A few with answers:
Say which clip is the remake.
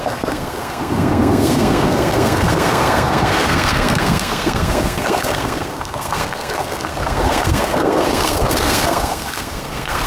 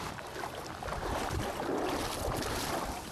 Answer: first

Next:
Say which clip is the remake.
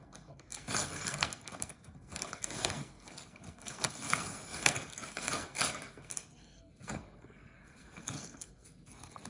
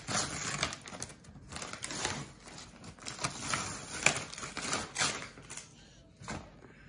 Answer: first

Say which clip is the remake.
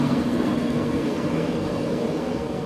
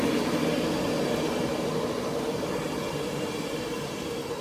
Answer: first